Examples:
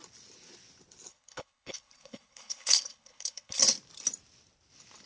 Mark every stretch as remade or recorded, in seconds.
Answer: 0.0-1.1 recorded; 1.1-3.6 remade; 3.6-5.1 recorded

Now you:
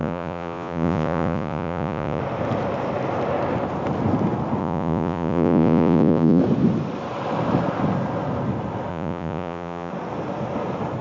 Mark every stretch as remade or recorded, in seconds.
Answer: 0.0-2.2 remade; 2.2-4.6 recorded; 4.6-6.4 remade; 6.4-8.9 recorded; 8.9-9.9 remade; 9.9-11.0 recorded

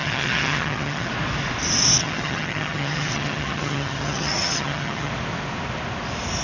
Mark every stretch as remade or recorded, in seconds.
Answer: 0.0-1.1 remade; 1.1-2.0 recorded; 2.0-5.1 remade; 5.1-6.4 recorded

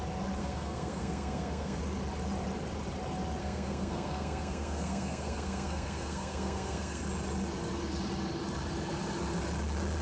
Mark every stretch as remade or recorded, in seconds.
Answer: 0.0-0.4 recorded; 0.4-1.8 remade; 1.8-3.4 recorded; 3.4-7.0 remade; 7.0-10.0 recorded

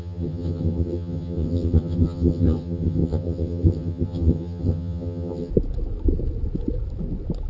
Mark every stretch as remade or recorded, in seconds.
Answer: 0.0-5.5 remade; 5.5-7.5 recorded

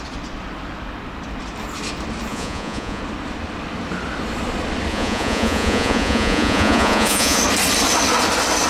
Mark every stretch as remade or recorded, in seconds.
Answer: 0.0-2.3 recorded; 2.3-3.0 remade; 3.0-4.9 recorded; 4.9-7.4 remade; 7.4-8.7 recorded

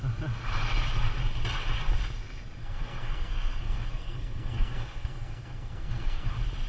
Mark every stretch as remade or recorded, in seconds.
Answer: 0.0-2.6 recorded; 2.6-6.3 remade; 6.3-6.7 recorded

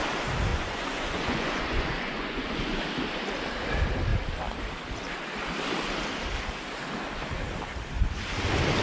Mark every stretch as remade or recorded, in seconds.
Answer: 0.0-0.5 recorded; 0.5-2.8 remade; 2.8-8.8 recorded